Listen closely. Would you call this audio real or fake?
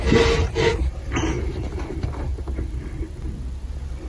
real